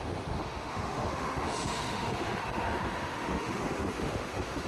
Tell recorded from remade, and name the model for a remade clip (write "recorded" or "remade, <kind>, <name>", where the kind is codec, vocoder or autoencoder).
remade, autoencoder, DAC-VAE